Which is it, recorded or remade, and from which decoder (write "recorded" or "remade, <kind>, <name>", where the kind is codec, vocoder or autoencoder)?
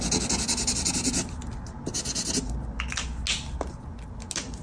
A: recorded